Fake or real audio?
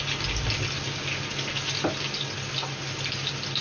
real